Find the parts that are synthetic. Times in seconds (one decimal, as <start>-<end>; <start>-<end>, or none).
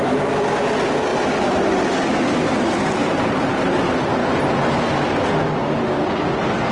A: 3.0-3.8